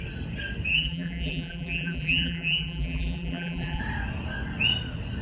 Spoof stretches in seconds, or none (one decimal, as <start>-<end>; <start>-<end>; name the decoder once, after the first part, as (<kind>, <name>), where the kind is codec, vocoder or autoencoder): 0.7-3.8 (vocoder, BigVGAN v2)